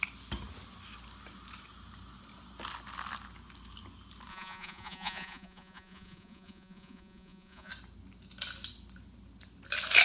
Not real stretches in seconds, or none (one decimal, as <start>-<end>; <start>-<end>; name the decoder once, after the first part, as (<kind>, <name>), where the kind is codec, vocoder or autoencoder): 4.3-7.7 (vocoder, Vocos)